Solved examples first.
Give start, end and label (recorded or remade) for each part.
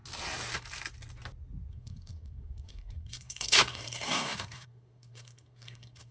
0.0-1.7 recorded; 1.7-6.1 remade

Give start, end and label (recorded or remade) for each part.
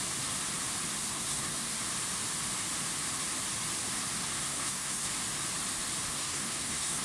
0.0-1.0 recorded; 1.0-1.8 remade; 1.8-4.2 recorded; 4.2-5.1 remade; 5.1-6.1 recorded; 6.1-7.0 remade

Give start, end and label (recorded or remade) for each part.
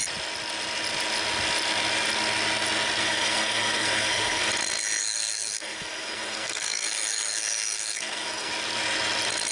0.0-3.0 recorded; 3.0-4.5 remade; 4.5-5.0 recorded; 5.0-8.5 remade; 8.5-9.5 recorded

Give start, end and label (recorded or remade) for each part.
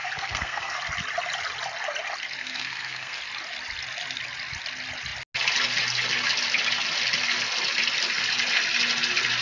0.0-0.8 remade; 0.8-2.4 recorded; 2.4-3.2 remade; 3.2-9.4 recorded